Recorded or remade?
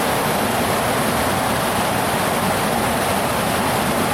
recorded